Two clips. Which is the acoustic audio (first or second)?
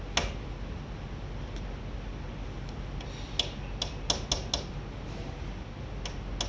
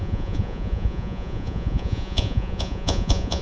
first